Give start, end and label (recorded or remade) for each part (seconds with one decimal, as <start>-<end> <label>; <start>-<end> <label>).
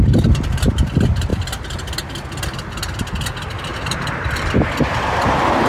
0.0-3.7 recorded; 3.7-4.5 remade; 4.5-5.7 recorded